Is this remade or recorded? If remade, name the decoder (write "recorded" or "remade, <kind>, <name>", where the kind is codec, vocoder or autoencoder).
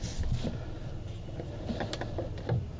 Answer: recorded